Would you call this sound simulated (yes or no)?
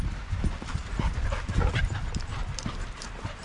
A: yes